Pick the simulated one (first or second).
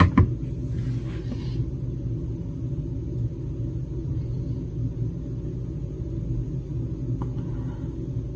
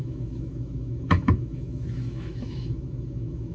second